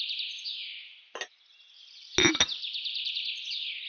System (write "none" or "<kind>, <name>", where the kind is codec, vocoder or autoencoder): none